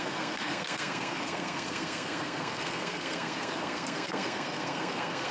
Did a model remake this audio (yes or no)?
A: yes